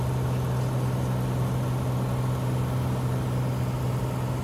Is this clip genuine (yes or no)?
yes